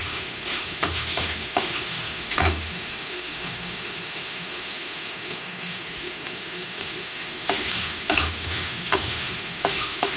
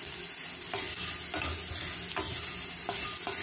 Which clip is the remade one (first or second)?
first